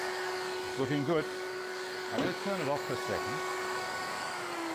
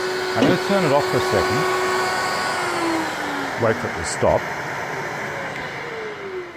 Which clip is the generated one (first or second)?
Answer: first